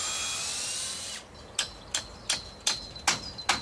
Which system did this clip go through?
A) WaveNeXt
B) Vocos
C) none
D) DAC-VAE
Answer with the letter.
C